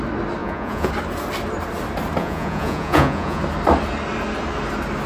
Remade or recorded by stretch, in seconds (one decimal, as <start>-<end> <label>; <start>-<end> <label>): 0.0-0.4 recorded; 0.4-0.9 remade; 0.9-2.2 recorded; 2.2-3.4 remade; 3.4-5.1 recorded